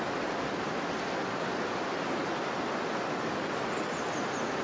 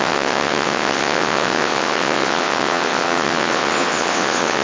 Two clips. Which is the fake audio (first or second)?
second